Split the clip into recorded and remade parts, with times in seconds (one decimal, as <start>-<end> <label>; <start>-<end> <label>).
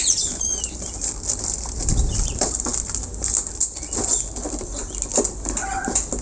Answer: 0.0-6.2 recorded